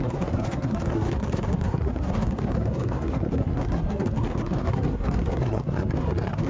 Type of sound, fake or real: fake